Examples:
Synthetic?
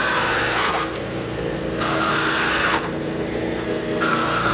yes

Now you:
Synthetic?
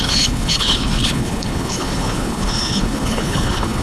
yes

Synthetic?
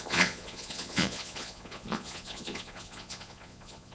yes